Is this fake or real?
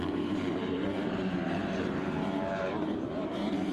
fake